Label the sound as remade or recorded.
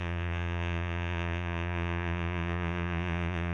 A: remade